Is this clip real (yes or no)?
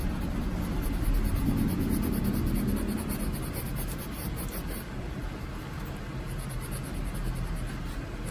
yes